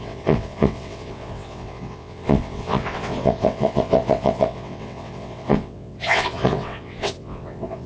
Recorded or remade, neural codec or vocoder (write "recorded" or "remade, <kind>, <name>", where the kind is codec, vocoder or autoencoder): remade, vocoder, WaveNeXt